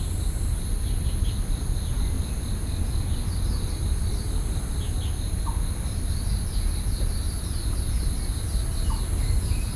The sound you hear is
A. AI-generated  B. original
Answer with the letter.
B